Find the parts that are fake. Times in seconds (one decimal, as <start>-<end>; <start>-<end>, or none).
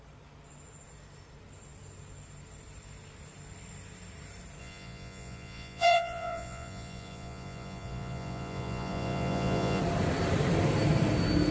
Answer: 4.6-9.8